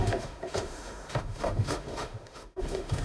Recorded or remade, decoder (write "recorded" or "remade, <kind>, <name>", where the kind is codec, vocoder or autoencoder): remade, autoencoder, DAC-VAE